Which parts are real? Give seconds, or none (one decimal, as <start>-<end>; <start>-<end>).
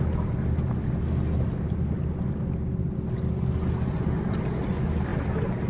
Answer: 0.0-5.7